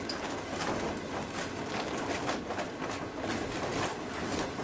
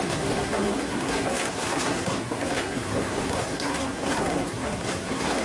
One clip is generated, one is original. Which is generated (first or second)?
second